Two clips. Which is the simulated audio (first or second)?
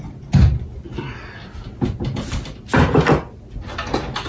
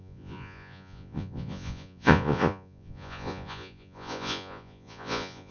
second